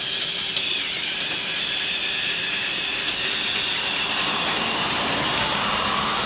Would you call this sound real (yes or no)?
no